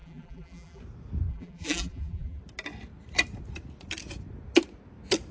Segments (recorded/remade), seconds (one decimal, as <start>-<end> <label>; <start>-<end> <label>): 0.0-0.8 remade; 0.8-1.3 recorded; 1.3-2.4 remade; 2.4-5.3 recorded